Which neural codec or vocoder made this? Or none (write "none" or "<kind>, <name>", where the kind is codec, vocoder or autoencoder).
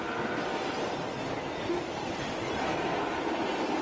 none